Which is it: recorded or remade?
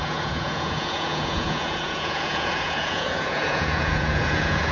remade